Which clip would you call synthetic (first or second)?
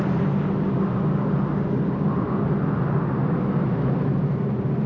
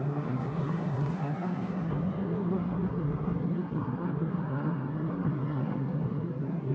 second